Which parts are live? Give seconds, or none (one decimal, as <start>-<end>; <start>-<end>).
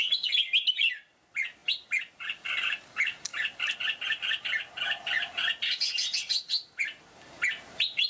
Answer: 0.0-8.1